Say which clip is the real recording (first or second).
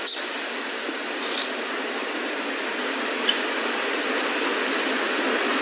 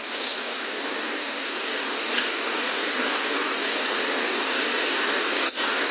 first